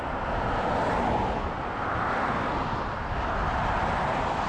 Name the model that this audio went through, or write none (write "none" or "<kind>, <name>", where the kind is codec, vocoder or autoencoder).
none